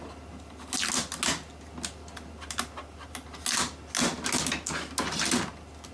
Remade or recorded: recorded